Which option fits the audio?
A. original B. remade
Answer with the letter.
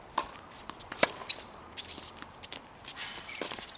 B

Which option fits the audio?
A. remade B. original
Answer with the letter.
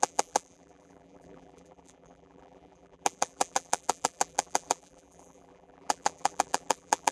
A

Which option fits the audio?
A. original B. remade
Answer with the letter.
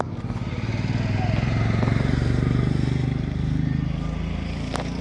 A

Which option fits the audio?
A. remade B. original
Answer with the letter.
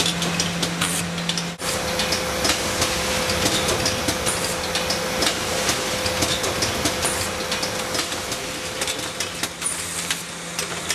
B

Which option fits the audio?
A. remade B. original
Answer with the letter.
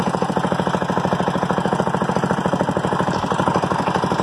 B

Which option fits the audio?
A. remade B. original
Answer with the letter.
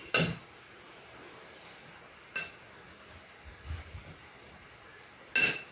B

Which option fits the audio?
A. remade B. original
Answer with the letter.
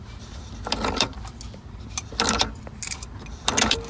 A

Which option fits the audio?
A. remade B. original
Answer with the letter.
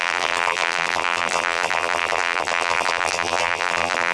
A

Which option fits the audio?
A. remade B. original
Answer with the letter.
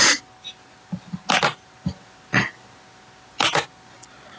B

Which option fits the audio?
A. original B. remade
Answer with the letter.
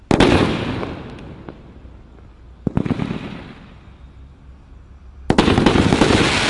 A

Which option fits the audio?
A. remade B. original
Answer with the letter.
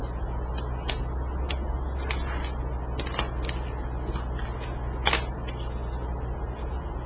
B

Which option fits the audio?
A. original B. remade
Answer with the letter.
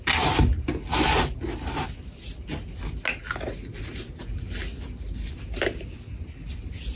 A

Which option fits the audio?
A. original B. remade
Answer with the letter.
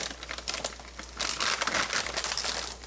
A